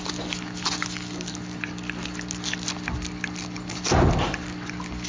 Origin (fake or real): real